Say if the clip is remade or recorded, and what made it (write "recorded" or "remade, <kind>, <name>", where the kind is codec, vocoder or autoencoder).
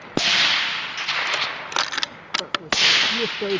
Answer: recorded